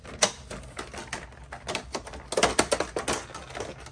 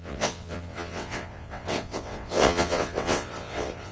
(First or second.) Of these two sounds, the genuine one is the first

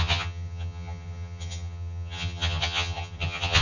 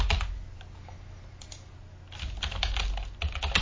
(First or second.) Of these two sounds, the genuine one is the second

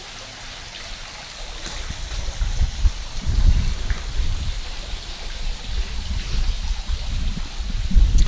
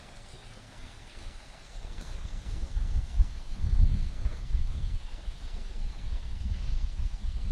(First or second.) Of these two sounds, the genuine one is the first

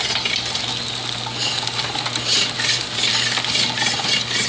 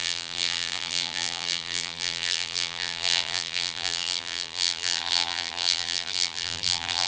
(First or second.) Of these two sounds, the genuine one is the first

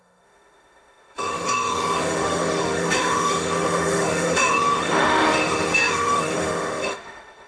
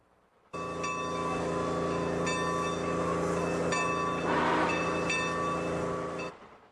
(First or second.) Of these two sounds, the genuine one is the second